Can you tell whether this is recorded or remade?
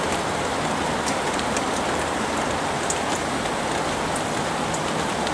recorded